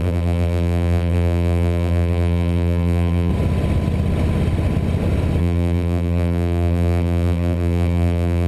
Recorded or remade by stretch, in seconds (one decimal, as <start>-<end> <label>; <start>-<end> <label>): 0.0-3.3 remade; 3.3-5.4 recorded; 5.4-8.5 remade